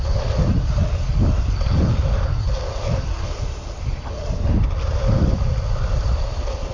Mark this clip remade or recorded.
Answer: recorded